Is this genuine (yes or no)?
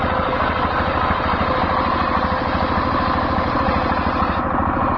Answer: yes